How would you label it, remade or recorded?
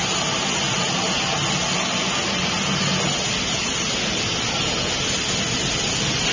recorded